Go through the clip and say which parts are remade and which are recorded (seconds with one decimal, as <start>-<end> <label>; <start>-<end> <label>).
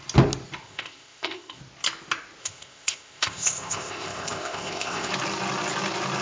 0.0-0.6 recorded; 0.6-1.6 remade; 1.6-2.4 recorded; 2.4-5.1 remade; 5.1-6.2 recorded